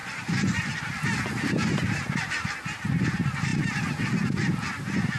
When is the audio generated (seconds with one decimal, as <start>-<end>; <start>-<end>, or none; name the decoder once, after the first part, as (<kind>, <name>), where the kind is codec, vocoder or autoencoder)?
0.0-0.8 (vocoder, Vocos)